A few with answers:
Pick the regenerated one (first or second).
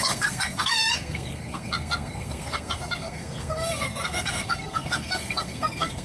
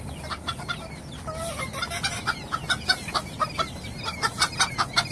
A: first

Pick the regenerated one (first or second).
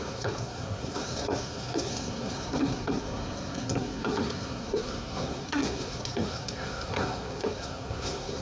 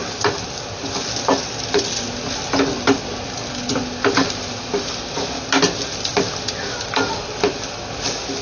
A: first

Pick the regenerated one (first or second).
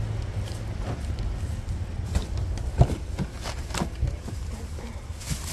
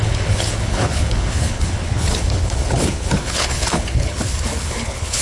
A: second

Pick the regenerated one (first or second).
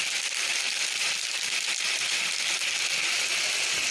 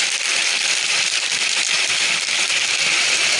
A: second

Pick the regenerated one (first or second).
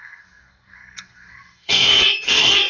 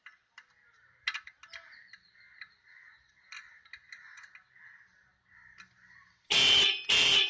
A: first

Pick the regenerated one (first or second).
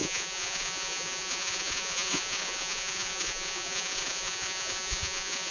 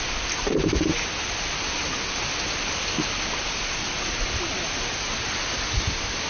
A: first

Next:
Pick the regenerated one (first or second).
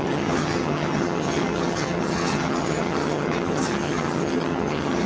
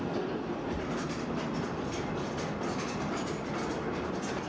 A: first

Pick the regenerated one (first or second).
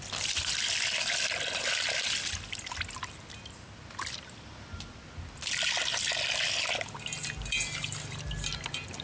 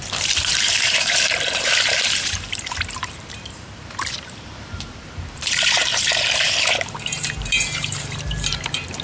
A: second